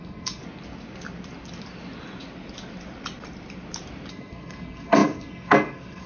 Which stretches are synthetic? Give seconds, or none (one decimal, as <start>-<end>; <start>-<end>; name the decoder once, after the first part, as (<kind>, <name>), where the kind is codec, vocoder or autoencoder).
0.0-0.4 (codec, SNAC); 4.1-6.1